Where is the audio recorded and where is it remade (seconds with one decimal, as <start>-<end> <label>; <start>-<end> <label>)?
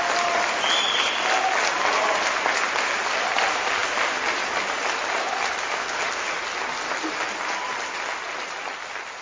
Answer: 0.0-9.2 recorded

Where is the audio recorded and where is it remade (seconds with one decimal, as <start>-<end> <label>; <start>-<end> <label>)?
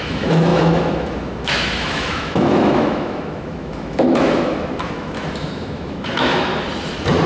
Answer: 0.0-6.5 remade; 6.5-7.3 recorded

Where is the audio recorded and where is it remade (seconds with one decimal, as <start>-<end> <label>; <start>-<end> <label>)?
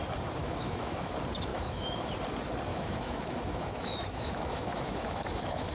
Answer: 0.0-0.4 recorded; 0.4-1.1 remade; 1.1-1.5 recorded; 1.5-2.1 remade; 2.1-2.7 recorded; 2.7-5.7 remade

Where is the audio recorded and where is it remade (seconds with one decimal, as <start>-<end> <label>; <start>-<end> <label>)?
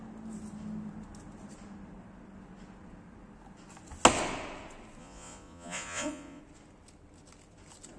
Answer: 0.0-5.0 recorded; 5.0-6.4 remade; 6.4-8.0 recorded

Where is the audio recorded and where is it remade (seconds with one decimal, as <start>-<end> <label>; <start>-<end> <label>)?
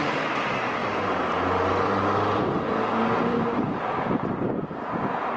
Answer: 0.0-0.8 recorded; 0.8-2.0 remade; 2.0-3.3 recorded; 3.3-4.6 remade; 4.6-5.4 recorded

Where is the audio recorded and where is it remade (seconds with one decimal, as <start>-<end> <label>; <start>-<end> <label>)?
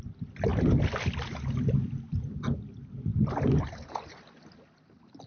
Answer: 0.0-5.3 recorded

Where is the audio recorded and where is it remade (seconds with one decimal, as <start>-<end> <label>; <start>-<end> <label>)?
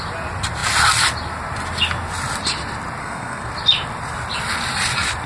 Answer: 0.0-3.0 recorded; 3.0-3.5 remade; 3.5-5.3 recorded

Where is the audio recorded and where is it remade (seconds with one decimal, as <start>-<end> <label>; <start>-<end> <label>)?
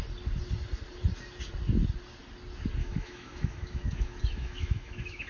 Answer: 0.0-2.8 recorded; 2.8-5.3 remade